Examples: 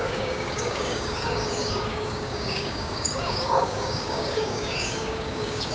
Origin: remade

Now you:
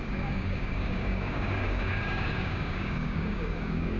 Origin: remade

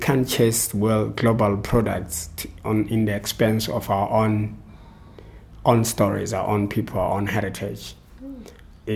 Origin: recorded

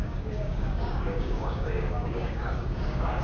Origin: remade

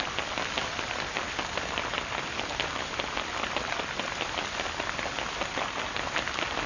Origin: recorded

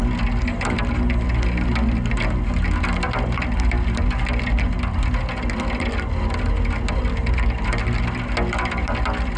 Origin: recorded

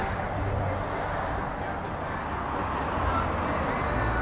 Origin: recorded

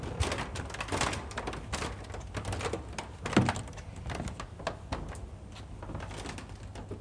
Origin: recorded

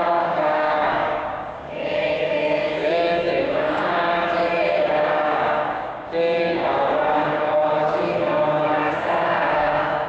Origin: remade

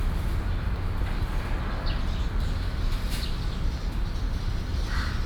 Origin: recorded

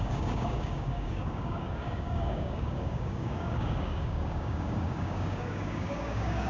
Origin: remade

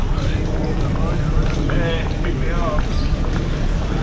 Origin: recorded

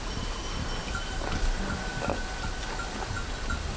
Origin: recorded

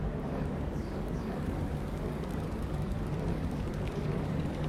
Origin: remade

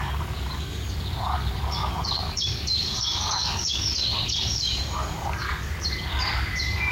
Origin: remade